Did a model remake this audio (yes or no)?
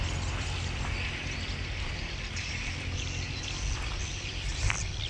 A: no